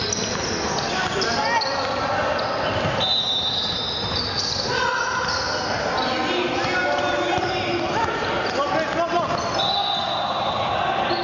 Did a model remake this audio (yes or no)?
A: no